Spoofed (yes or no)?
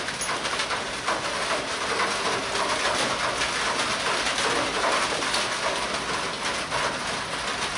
no